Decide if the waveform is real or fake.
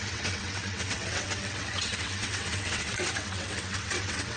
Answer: fake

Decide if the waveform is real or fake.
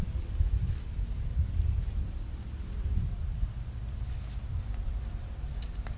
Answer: real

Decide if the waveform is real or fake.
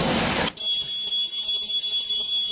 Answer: real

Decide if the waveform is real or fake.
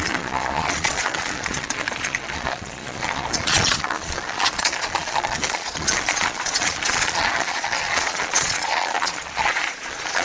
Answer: fake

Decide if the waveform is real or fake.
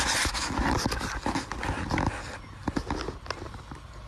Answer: real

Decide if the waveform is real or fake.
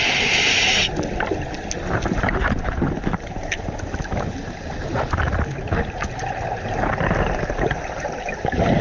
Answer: real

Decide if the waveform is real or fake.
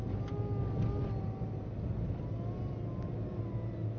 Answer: real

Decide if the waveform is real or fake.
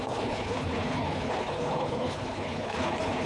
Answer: fake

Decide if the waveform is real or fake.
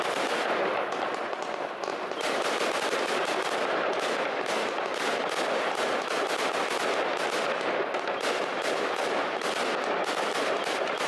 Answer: real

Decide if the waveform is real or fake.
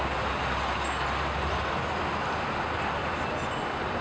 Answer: real